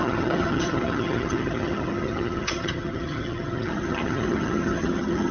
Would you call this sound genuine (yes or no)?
no